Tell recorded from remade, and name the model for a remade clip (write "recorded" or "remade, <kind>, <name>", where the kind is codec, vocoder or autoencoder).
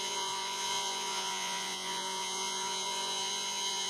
remade, vocoder, Vocos